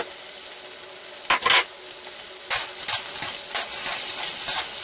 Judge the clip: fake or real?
real